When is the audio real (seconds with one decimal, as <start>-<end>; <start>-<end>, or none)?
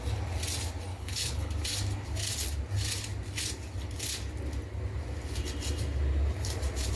0.0-0.9; 1.5-7.0